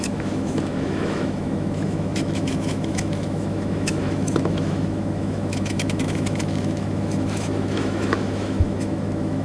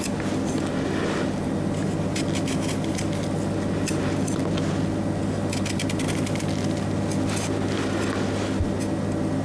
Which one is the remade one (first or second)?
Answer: first